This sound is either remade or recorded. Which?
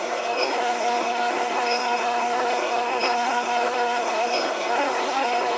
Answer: remade